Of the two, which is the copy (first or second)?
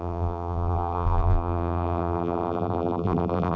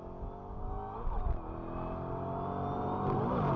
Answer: first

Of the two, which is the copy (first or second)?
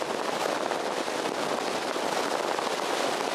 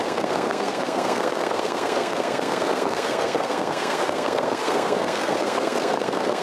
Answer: second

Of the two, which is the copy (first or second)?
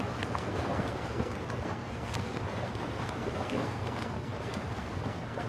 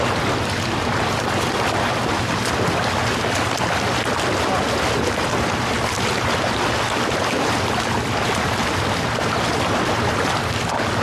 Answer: first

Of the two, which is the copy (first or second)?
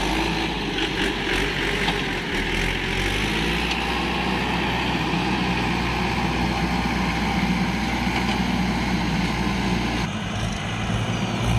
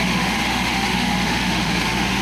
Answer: second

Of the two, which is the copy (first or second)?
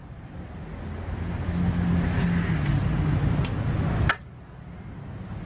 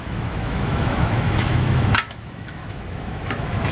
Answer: second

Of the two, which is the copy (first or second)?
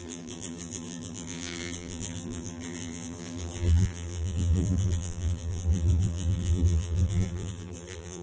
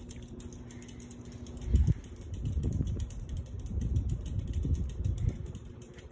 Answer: first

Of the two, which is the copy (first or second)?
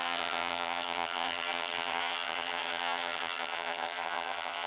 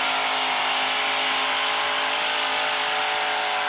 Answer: first